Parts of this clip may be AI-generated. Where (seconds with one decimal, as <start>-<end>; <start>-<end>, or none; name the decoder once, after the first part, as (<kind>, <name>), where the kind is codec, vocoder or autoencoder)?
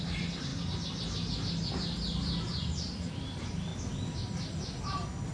none